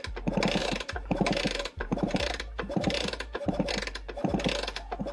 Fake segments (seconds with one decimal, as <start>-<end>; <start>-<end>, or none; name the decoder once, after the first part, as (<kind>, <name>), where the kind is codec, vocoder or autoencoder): 0.6-3.7 (vocoder, BigVGAN v2)